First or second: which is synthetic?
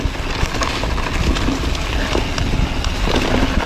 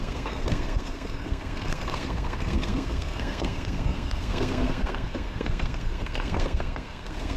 second